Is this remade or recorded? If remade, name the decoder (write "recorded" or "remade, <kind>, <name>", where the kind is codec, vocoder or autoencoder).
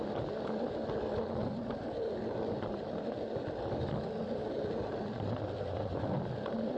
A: recorded